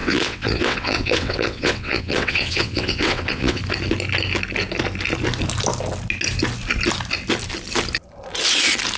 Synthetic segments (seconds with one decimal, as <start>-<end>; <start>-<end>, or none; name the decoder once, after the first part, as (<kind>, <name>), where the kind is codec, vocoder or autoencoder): 0.0-3.6 (vocoder, WaveNeXt)